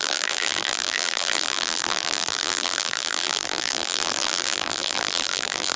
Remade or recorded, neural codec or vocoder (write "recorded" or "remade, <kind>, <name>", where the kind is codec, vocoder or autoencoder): remade, vocoder, BigVGAN v2